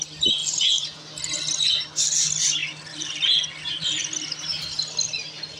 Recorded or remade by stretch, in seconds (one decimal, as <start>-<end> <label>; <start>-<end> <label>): 0.0-0.4 recorded; 0.4-1.1 remade; 1.1-5.6 recorded